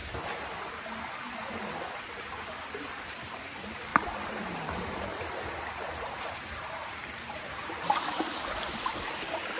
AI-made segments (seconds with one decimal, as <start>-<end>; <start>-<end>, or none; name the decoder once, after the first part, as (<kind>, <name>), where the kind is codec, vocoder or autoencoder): 0.0-0.7 (vocoder, BigVGAN v2); 3.9-7.4